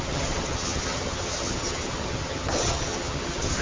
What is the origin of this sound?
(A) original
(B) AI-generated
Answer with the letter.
B